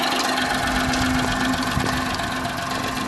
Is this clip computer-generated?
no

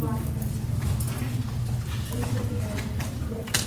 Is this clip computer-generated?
no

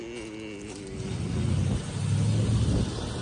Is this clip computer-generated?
no